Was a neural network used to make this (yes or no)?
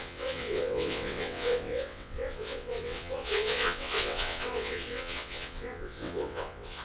yes